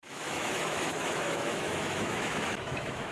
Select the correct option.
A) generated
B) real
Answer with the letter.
A